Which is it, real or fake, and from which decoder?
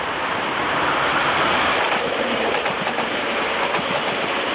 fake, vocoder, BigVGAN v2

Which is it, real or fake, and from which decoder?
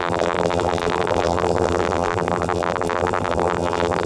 fake, vocoder, BigVGAN v2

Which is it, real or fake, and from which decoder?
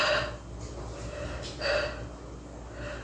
real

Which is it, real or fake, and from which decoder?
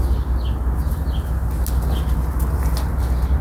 real